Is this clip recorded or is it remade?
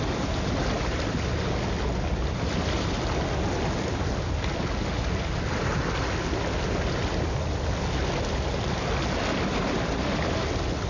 recorded